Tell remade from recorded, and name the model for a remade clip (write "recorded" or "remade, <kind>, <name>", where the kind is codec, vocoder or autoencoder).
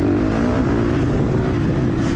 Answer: recorded